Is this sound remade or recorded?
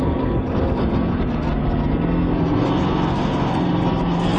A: remade